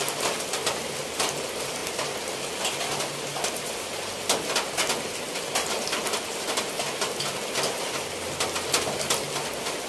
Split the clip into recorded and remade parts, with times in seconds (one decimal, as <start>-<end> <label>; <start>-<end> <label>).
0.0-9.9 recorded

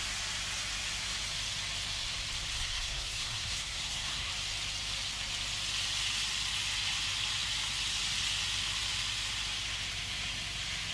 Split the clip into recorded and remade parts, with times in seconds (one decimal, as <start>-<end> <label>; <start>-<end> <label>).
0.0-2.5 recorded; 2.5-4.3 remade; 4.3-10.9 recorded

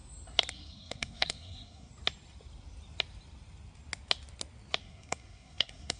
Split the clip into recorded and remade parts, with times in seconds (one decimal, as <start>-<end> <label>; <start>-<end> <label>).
0.0-0.5 recorded; 0.5-1.9 remade; 1.9-4.8 recorded; 4.8-6.0 remade

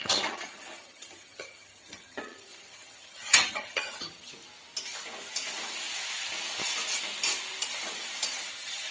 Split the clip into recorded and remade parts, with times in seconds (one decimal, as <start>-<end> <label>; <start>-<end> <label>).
0.0-4.3 remade; 4.3-8.5 recorded; 8.5-8.9 remade